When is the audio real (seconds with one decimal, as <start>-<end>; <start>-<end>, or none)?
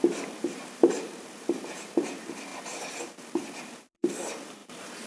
none